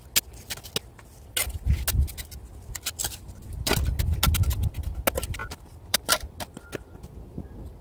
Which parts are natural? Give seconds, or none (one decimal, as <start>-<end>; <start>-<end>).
0.0-3.0; 4.0-5.4; 6.6-7.8